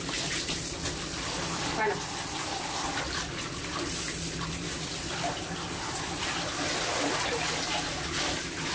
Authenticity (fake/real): real